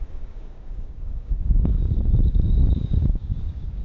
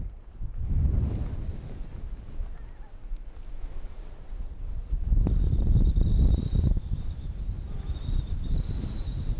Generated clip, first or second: first